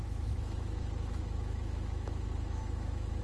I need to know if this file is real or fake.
fake